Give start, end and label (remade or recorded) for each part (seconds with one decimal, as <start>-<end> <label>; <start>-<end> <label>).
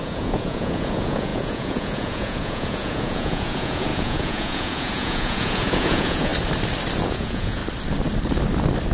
0.0-6.3 remade; 6.3-7.1 recorded; 7.1-7.6 remade; 7.6-8.9 recorded